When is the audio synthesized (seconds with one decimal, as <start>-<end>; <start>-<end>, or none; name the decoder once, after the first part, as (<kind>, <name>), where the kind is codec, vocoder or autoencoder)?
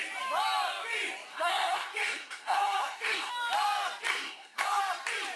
1.3-3.3 (codec, SNAC); 4.1-4.8